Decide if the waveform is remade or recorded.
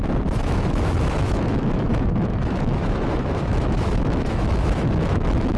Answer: remade